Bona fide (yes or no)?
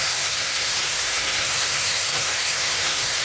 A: no